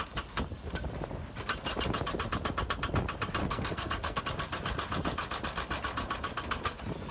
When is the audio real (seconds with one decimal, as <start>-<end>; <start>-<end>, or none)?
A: 0.0-3.4; 4.2-7.1